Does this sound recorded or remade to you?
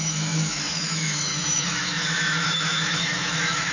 remade